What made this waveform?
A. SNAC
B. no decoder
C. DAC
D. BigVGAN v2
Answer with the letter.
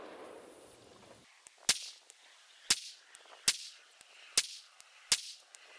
B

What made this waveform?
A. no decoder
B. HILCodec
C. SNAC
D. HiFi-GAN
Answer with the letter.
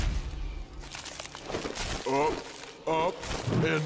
A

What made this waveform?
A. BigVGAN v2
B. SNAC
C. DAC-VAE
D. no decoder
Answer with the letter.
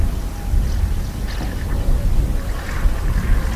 D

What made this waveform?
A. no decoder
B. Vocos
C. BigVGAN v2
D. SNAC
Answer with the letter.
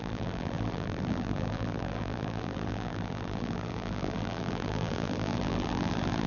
C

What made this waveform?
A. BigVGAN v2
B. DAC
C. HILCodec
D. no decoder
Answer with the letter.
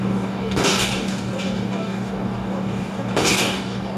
B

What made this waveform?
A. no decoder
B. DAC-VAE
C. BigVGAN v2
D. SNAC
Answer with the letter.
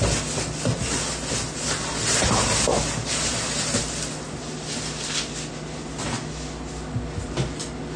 A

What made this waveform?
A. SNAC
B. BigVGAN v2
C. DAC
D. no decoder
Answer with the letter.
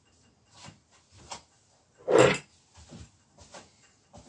D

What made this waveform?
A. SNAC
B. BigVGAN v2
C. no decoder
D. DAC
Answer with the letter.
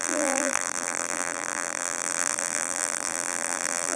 B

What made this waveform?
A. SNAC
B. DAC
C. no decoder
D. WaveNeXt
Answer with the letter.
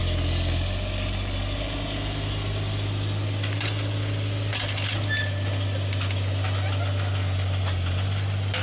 C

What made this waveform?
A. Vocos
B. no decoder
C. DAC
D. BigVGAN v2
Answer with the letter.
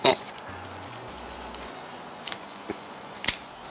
A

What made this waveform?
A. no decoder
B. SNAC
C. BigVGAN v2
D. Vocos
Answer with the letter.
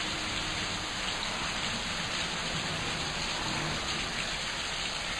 A